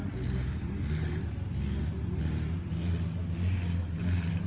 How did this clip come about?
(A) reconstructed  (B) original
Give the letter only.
B